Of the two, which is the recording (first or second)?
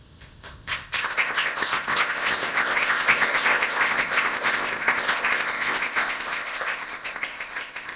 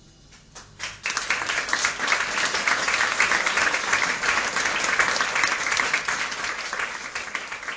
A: second